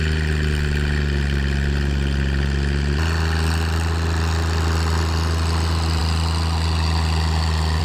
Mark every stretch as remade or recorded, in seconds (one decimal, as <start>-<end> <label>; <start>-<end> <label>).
0.0-7.8 recorded